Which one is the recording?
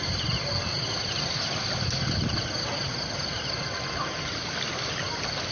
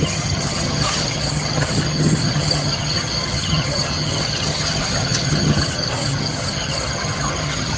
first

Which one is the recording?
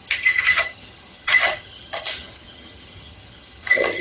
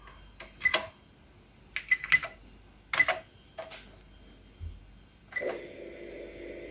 second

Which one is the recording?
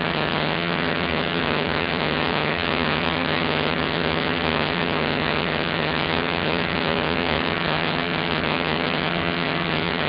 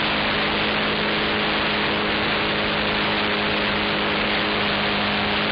second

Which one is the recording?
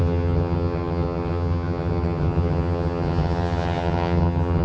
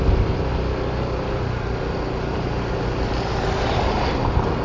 second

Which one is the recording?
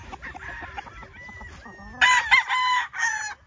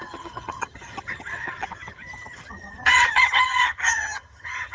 first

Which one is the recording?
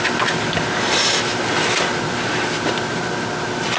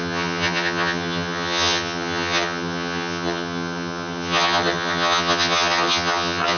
first